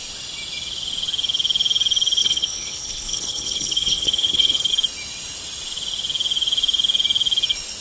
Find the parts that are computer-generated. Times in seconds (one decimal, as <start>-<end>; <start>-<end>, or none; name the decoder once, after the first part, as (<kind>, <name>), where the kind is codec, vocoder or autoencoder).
2.2-4.7 (codec, HILCodec)